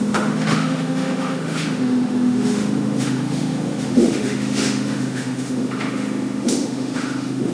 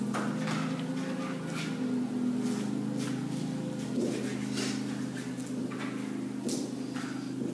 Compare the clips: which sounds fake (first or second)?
first